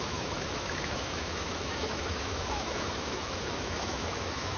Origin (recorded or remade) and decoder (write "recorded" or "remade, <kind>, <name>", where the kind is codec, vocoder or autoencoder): remade, autoencoder, DAC-VAE